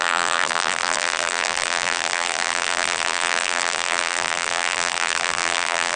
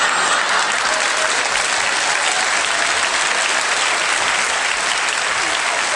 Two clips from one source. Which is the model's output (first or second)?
first